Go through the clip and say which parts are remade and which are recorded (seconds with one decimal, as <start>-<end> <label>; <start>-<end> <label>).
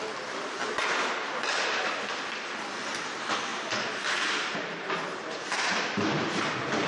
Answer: 0.0-3.5 recorded; 3.5-6.5 remade; 6.5-6.9 recorded